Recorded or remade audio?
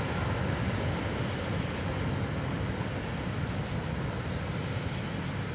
recorded